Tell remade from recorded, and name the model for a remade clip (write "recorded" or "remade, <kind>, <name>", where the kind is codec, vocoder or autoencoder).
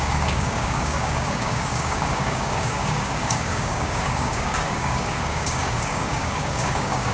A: remade, codec, DAC